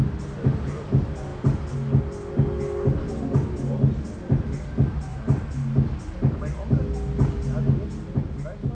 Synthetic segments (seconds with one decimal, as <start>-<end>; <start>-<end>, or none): none

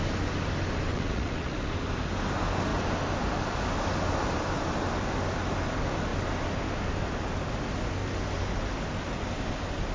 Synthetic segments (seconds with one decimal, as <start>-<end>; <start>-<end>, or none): 0.9-1.7

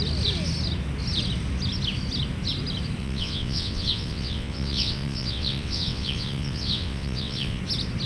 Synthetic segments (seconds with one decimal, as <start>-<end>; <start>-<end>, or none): 3.0-7.6

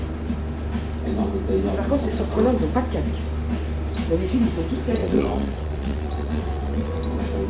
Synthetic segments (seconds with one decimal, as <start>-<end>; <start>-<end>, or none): 5.0-7.0

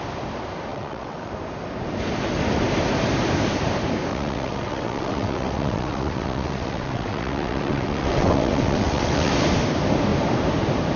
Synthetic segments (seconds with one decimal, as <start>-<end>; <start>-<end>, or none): 0.7-1.3; 4.1-9.3

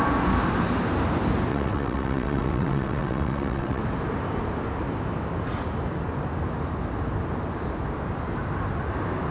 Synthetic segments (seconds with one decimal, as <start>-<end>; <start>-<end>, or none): 1.5-3.8

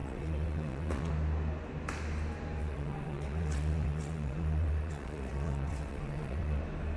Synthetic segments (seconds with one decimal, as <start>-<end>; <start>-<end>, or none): 0.0-1.1; 2.6-6.6

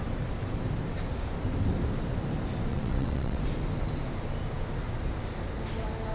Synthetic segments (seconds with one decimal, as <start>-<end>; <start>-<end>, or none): 2.7-3.4